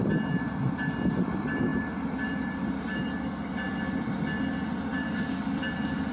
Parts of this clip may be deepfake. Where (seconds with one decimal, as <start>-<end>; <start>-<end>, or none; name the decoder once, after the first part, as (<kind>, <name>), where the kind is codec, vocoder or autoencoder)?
none